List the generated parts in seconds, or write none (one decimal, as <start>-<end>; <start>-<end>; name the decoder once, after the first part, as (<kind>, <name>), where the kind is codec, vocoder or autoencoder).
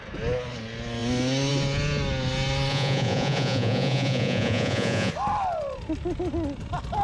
2.7-5.1 (vocoder, Vocos)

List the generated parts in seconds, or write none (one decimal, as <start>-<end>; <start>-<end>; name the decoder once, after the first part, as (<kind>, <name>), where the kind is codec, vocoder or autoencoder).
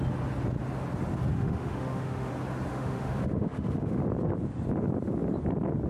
1.3-2.3 (autoencoder, DAC-VAE); 2.7-4.0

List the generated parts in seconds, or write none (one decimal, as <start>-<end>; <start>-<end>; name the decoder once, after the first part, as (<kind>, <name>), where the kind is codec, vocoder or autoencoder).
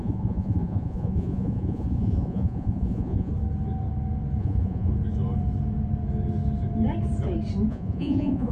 0.0-3.3 (vocoder, Vocos); 4.4-4.9; 7.7-8.5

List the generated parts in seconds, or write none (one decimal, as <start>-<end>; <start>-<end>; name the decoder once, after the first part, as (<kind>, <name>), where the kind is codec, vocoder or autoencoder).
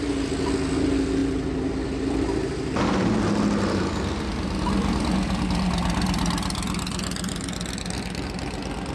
none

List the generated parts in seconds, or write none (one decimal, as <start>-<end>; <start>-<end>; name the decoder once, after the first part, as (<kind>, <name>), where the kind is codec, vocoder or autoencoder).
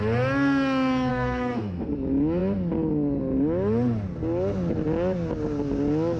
1.1-1.9 (codec, SNAC)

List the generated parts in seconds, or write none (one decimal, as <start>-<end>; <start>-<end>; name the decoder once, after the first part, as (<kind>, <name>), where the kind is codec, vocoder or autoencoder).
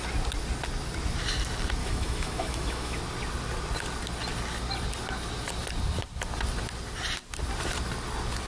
1.8-3.0 (autoencoder, DAC-VAE)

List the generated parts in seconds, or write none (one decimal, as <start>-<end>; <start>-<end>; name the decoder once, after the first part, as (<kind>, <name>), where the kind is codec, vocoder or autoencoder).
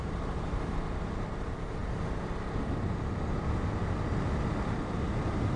none